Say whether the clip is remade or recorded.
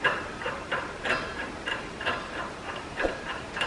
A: remade